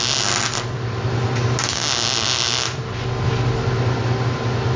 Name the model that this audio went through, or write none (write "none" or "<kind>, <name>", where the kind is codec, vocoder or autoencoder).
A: none